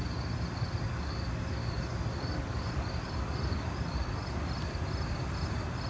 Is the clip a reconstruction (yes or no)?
no